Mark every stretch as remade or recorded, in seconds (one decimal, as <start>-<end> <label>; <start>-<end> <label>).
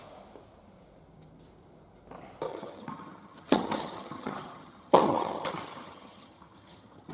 0.0-2.5 recorded; 2.5-7.1 remade